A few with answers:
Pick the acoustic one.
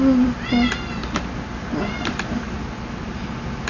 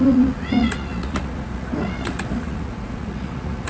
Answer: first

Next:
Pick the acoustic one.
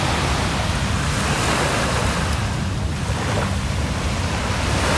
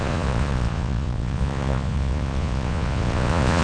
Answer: first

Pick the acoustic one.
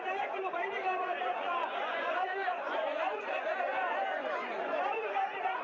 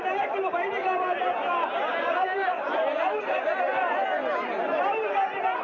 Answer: second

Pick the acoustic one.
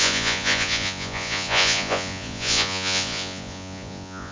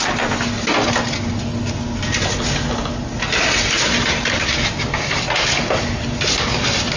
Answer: second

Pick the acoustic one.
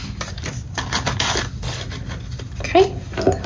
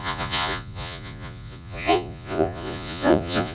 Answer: first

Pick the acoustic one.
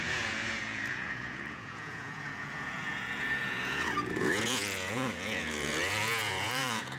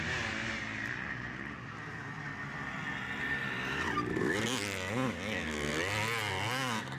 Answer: second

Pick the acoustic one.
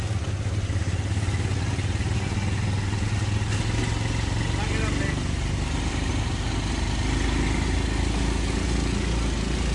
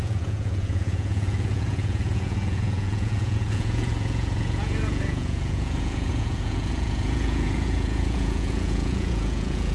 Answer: first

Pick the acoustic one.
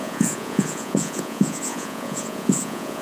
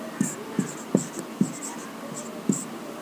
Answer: second